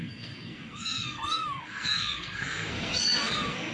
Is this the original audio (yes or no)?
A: no